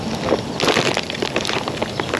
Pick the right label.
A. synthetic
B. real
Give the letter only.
B